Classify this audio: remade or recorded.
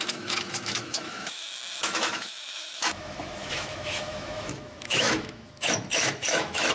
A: remade